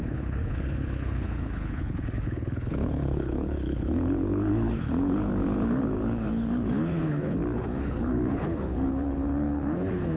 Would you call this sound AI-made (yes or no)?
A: yes